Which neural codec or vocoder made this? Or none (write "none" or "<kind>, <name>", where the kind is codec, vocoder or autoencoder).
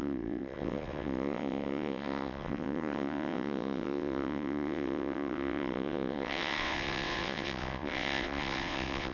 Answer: vocoder, WaveNeXt